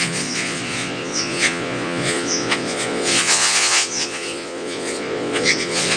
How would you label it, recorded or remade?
remade